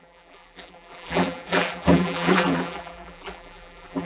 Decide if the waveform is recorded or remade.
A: remade